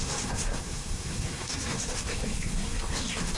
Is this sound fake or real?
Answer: fake